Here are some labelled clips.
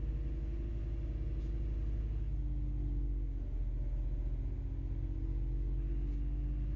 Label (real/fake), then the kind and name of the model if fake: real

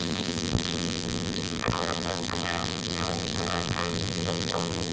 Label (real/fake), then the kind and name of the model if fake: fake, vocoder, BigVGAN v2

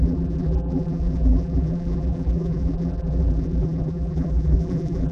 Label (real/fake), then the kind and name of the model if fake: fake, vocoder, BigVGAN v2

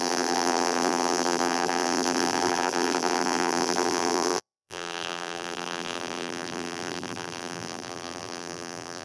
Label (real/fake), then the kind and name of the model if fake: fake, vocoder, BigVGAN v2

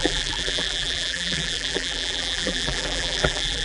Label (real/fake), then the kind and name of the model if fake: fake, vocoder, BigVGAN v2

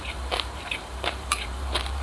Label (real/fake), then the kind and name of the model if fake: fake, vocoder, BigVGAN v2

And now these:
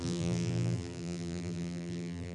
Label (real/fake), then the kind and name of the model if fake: fake, vocoder, BigVGAN v2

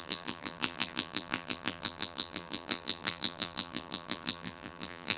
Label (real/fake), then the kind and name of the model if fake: fake, vocoder, BigVGAN v2